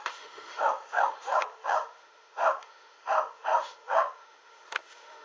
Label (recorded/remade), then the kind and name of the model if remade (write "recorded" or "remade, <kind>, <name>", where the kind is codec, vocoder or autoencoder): remade, autoencoder, DAC-VAE